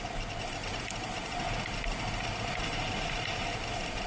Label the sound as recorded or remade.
recorded